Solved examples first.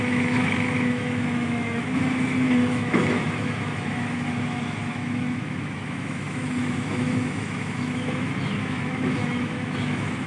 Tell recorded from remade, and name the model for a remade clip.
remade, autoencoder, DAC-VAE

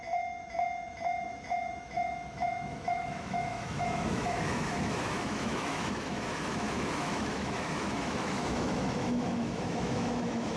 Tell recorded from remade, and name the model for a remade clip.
remade, autoencoder, DAC-VAE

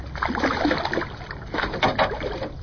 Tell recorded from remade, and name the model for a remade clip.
recorded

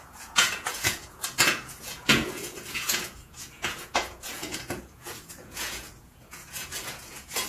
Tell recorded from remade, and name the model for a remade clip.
remade, vocoder, Vocos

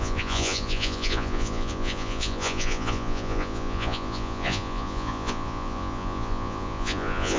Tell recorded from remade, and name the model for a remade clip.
remade, vocoder, Vocos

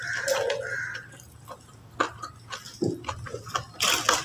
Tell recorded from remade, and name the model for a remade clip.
recorded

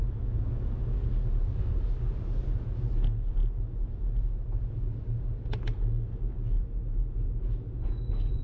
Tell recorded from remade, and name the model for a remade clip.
recorded